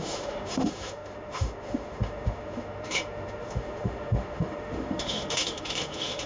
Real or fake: fake